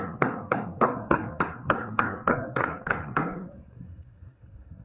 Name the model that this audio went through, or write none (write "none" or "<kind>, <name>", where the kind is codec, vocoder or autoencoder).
codec, SNAC